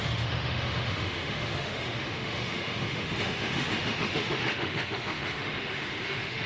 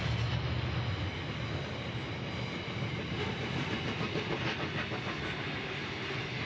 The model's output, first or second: first